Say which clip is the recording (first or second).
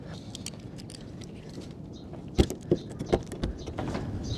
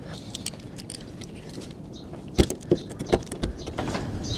first